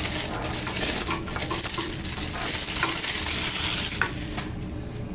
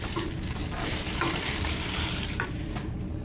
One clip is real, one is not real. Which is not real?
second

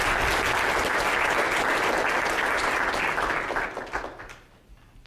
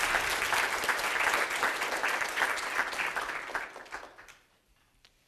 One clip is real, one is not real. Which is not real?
second